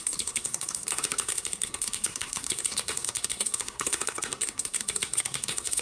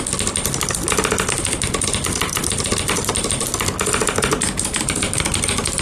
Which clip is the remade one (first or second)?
first